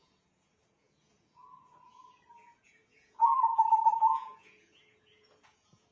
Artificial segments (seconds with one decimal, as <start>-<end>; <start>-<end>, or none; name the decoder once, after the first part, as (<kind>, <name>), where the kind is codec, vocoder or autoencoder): 0.0-5.9 (vocoder, Vocos)